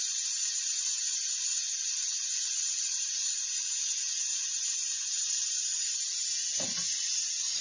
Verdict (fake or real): real